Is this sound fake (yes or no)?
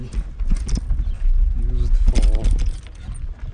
no